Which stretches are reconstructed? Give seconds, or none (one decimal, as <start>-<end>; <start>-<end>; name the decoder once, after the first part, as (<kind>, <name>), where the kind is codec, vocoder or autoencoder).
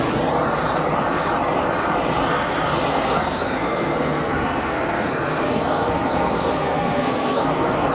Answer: 2.9-7.9 (codec, SNAC)